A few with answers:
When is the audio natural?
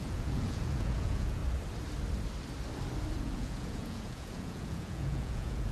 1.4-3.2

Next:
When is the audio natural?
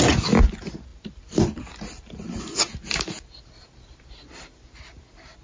0.0-5.4